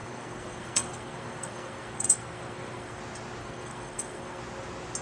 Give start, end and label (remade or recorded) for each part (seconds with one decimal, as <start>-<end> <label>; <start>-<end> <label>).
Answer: 0.0-3.0 remade; 3.0-3.4 recorded; 3.4-4.4 remade; 4.4-5.0 recorded